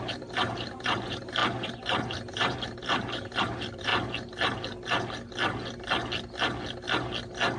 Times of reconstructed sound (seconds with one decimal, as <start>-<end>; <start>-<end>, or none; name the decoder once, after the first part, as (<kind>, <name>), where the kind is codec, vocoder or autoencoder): 0.0-3.9 (vocoder, BigVGAN v2)